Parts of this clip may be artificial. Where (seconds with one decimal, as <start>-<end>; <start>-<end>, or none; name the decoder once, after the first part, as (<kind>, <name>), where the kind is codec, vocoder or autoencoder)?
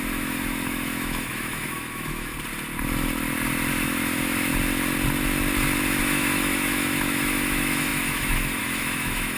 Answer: 0.0-2.3 (autoencoder, DAC-VAE); 3.7-4.5; 6.0-9.4